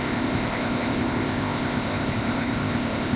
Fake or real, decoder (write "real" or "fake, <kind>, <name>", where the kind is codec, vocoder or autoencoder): fake, codec, ZipCodec